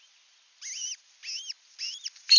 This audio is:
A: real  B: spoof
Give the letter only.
A